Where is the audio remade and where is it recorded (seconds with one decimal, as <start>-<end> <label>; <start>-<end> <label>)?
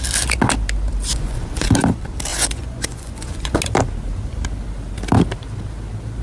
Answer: 0.0-1.1 recorded; 1.1-1.7 remade; 1.7-2.3 recorded; 2.3-3.6 remade; 3.6-6.2 recorded